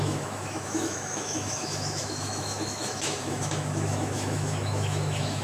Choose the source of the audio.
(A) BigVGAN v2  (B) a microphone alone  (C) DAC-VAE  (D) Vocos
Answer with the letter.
C